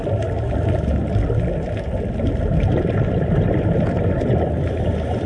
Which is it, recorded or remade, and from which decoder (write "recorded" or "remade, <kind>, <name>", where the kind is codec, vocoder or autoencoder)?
recorded